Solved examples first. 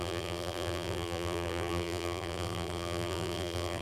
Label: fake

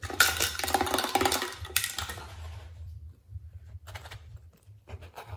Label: fake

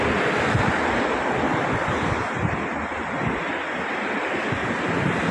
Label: real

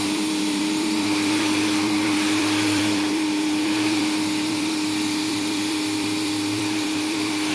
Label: fake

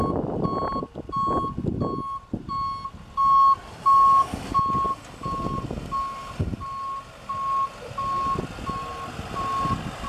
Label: real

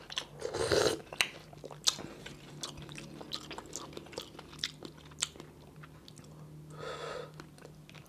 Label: real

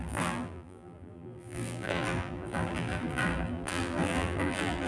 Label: fake